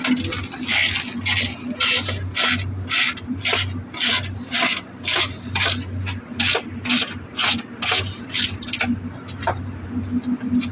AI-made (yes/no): no